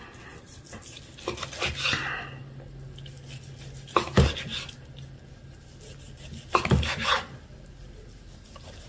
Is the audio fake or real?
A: real